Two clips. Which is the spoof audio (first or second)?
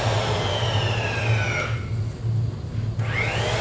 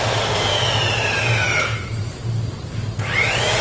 second